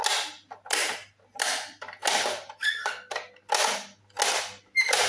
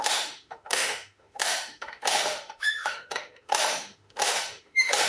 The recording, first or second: first